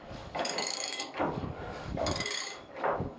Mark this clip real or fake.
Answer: fake